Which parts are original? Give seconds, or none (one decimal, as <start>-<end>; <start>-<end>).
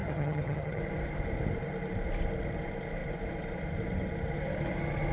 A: 0.8-5.1